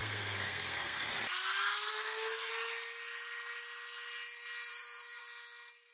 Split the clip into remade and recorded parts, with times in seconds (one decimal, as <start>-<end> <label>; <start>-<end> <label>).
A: 0.0-1.1 remade; 1.1-1.9 recorded; 1.9-2.5 remade; 2.5-4.7 recorded; 4.7-5.2 remade; 5.2-5.9 recorded